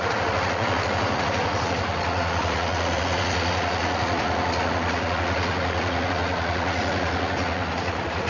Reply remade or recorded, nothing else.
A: remade